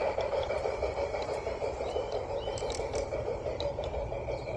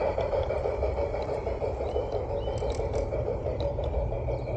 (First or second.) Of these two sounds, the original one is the second